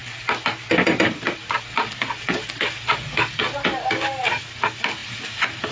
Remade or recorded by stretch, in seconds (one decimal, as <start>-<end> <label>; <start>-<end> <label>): 0.0-5.7 recorded